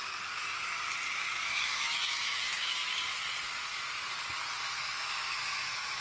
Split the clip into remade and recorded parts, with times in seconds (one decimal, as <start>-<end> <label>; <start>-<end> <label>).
0.0-1.3 recorded; 1.3-2.8 remade; 2.8-4.8 recorded; 4.8-6.0 remade